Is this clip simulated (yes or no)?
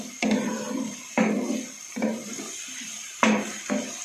yes